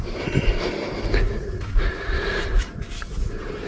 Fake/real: real